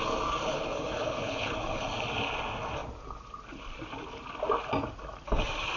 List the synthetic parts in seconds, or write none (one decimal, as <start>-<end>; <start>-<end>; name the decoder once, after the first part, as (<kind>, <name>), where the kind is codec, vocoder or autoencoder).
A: 0.5-1.9 (codec, HILCodec)